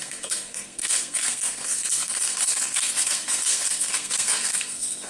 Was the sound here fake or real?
fake